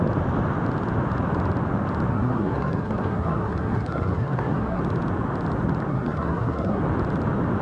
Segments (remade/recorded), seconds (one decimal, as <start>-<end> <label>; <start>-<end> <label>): 0.0-2.1 recorded; 2.1-4.8 remade; 4.8-5.9 recorded; 5.9-6.8 remade; 6.8-7.6 recorded